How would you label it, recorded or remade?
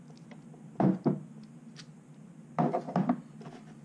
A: recorded